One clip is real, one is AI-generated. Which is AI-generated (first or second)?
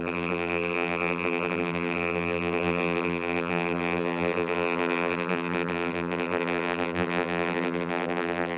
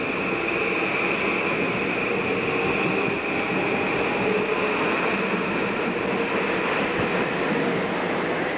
first